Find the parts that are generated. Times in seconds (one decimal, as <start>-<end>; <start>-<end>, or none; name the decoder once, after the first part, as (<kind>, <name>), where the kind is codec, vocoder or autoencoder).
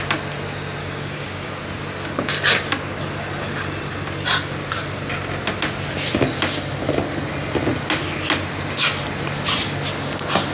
0.8-1.5 (codec, DAC)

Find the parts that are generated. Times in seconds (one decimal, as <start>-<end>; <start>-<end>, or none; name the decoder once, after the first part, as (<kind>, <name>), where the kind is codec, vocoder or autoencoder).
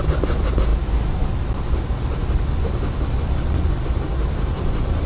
none